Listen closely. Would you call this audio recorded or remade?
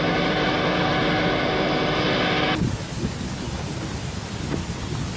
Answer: recorded